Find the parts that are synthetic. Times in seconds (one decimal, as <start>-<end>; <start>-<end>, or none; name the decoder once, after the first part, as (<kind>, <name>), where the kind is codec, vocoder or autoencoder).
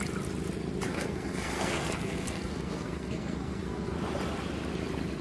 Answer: 0.9-4.0 (codec, SNAC)